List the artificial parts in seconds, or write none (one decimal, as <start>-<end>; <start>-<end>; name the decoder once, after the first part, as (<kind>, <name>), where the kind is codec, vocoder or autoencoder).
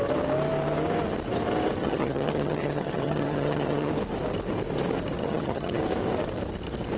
1.8-3.9 (vocoder, HiFi-GAN); 5.2-5.8